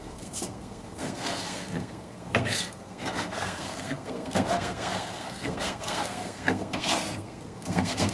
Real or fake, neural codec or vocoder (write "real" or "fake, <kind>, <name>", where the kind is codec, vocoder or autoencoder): fake, codec, SNAC